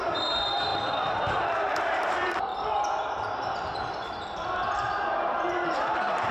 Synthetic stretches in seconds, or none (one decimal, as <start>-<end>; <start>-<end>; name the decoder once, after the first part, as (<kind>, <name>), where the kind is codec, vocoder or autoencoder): 0.0-0.7 (vocoder, BigVGAN v2); 1.4-2.5; 3.1-6.3